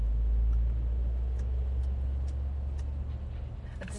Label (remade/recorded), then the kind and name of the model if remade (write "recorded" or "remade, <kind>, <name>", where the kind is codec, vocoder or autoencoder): recorded